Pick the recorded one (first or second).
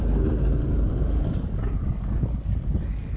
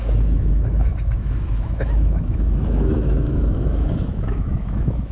first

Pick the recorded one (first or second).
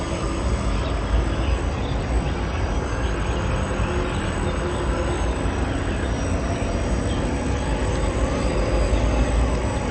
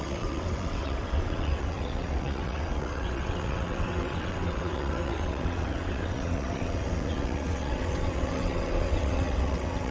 first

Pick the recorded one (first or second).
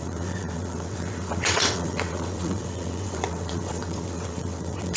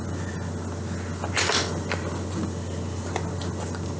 second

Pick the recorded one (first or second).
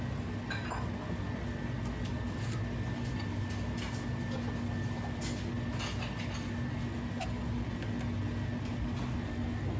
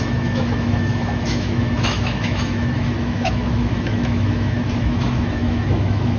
first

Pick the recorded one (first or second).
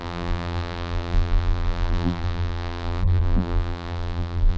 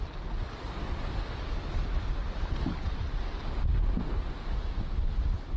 second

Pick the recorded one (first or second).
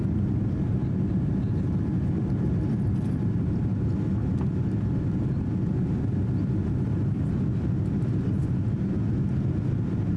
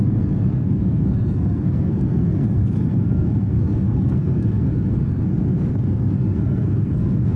first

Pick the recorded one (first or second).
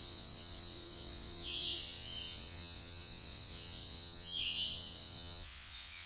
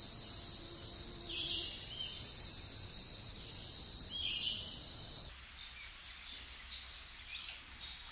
second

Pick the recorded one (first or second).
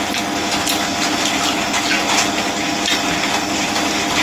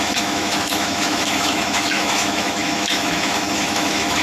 first